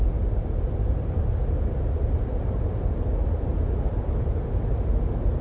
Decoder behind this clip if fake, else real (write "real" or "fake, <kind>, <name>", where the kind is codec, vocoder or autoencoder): real